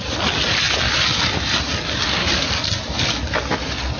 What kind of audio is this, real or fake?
real